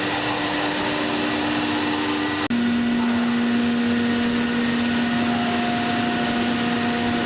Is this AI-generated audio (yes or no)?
no